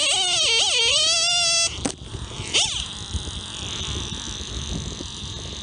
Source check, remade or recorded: recorded